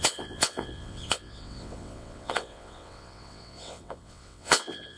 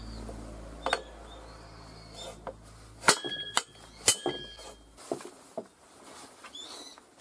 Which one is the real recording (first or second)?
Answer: second